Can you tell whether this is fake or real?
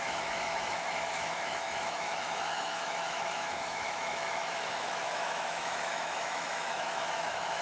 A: fake